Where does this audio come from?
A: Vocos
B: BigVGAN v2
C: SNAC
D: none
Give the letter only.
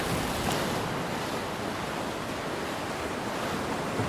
D